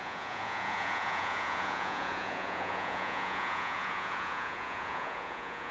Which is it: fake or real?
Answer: fake